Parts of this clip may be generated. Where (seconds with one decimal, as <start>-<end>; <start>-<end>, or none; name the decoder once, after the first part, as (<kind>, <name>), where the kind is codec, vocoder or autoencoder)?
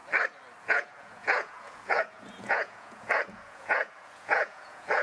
0.6-5.0 (vocoder, Vocos)